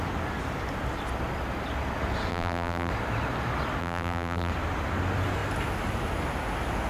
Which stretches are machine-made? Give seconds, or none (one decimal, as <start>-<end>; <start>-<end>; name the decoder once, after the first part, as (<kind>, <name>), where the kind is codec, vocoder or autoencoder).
2.3-2.9 (vocoder, BigVGAN v2); 3.8-4.5